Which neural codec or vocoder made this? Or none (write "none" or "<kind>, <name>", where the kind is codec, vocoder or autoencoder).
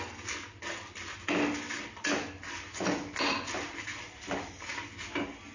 none